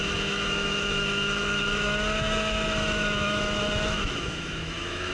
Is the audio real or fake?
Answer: fake